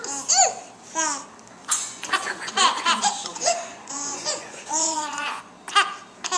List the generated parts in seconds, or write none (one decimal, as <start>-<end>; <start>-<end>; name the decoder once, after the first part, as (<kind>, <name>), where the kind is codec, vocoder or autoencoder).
1.6-5.4 (vocoder, Vocos)